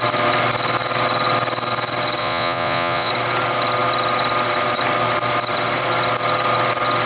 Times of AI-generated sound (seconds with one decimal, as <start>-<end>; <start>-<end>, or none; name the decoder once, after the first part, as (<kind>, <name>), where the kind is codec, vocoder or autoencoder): 2.2-3.1 (vocoder, Vocos)